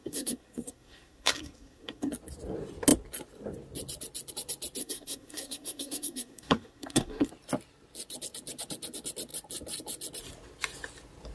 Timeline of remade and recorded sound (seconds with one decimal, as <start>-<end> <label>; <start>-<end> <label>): 0.0-2.1 remade; 2.1-4.8 recorded; 4.8-7.3 remade; 7.3-11.3 recorded